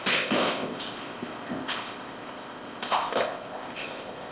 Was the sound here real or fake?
fake